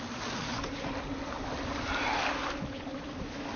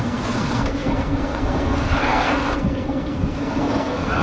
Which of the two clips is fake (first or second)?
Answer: second